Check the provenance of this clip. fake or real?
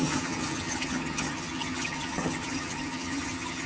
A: fake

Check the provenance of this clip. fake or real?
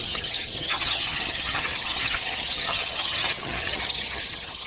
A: fake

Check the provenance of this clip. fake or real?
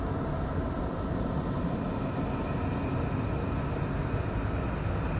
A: real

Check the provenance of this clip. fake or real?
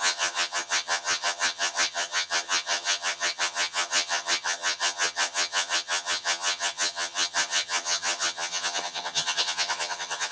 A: fake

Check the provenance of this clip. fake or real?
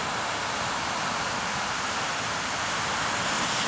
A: real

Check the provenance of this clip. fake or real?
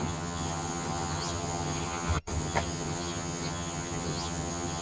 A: fake